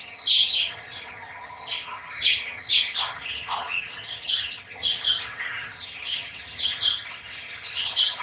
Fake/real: fake